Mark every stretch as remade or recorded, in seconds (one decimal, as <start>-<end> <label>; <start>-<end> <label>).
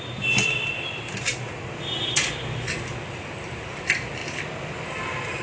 0.0-5.4 recorded